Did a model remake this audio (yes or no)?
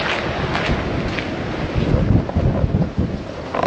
no